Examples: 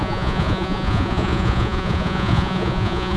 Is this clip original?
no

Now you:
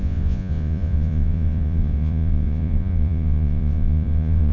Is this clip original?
no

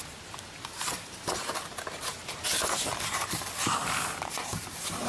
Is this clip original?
no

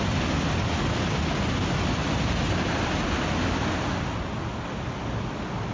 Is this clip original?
yes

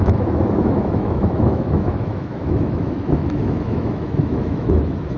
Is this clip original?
no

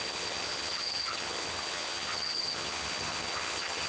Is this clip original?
no